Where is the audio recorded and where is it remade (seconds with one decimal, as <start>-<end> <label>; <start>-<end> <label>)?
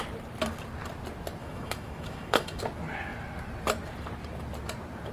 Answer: 0.0-1.4 recorded; 1.4-2.6 remade; 2.6-5.1 recorded